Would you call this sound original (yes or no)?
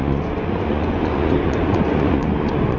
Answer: no